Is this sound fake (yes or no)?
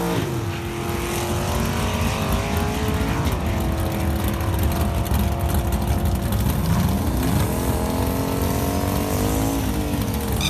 no